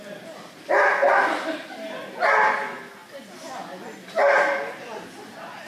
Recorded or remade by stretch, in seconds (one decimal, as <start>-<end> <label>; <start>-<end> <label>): 0.0-5.7 recorded